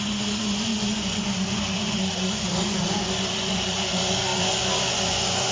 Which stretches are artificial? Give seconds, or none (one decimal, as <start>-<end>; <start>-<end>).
0.0-5.5